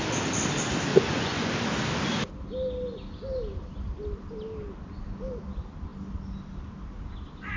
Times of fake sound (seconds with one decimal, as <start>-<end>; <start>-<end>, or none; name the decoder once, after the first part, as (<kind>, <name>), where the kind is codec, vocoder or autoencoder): 0.9-1.5 (vocoder, Vocos)

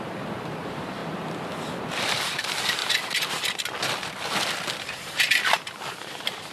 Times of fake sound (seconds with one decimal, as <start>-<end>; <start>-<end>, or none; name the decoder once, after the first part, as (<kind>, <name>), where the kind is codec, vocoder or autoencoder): 0.0-1.0 (vocoder, BigVGAN v2); 2.0-2.8; 4.8-6.5

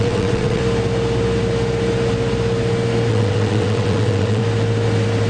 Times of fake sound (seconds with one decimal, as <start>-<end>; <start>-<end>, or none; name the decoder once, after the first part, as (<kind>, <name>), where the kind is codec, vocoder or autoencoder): 0.0-0.6 (vocoder, WaveNeXt); 3.1-4.4

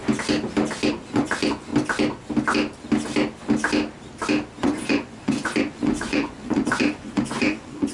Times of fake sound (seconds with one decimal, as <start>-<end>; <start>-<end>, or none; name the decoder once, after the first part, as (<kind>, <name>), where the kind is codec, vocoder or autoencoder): 0.9-1.7 (vocoder, Vocos); 4.6-7.9

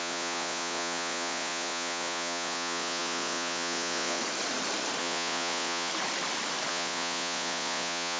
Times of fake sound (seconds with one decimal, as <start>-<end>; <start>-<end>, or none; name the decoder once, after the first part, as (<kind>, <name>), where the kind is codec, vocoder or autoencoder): 0.0-4.2 (vocoder, Vocos); 5.0-5.9; 6.7-8.2